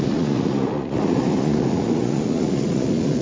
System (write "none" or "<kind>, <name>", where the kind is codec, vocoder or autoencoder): vocoder, Vocos